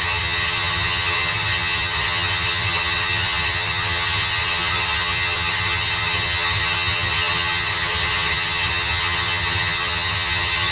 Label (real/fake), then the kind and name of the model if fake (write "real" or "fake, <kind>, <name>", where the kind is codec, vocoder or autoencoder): fake, vocoder, HiFi-GAN